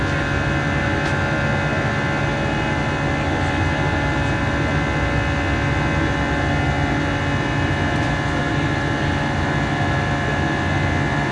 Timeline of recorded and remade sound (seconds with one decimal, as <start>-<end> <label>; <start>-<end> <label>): 0.0-11.3 recorded